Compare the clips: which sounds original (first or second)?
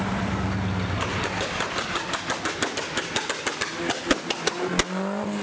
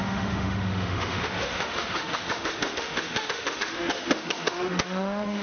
first